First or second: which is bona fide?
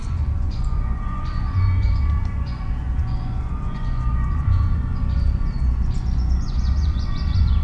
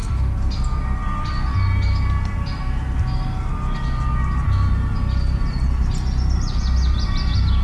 second